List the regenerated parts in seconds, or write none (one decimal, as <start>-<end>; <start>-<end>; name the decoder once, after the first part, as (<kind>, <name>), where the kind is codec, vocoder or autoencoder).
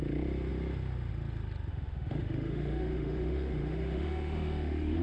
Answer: 1.7-5.0 (autoencoder, DAC-VAE)